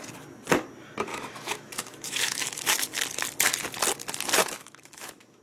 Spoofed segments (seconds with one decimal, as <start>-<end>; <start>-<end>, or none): 1.1-3.0; 4.4-5.4

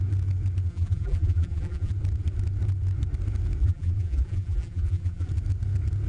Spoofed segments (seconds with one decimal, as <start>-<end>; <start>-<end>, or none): 0.7-1.9; 3.6-5.3

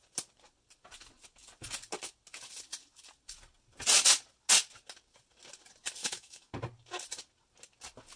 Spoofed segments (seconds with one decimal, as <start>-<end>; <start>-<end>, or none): 6.0-6.5